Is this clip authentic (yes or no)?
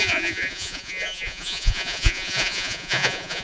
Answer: no